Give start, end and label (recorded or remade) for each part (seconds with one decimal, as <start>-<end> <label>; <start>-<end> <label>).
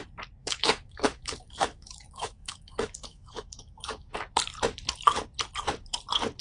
0.0-0.4 recorded; 0.4-4.2 remade; 4.2-6.4 recorded